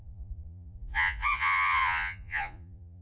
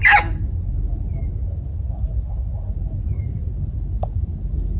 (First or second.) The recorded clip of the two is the second